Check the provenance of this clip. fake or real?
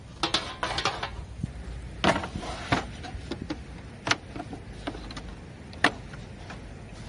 real